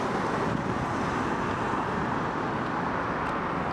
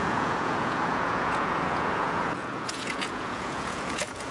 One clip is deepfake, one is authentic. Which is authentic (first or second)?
first